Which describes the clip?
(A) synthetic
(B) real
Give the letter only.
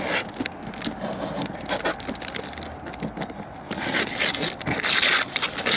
B